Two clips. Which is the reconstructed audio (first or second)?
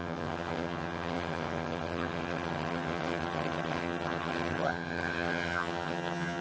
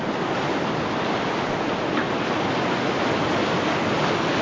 first